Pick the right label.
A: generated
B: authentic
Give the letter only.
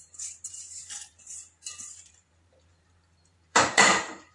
A